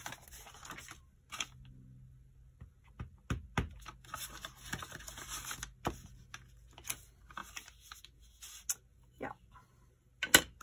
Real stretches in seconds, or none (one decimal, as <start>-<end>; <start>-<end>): 0.0-10.6